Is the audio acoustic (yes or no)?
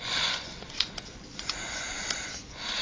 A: no